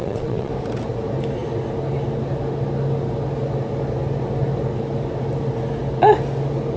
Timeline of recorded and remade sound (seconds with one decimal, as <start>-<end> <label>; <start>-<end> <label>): 0.0-0.5 remade; 0.5-6.8 recorded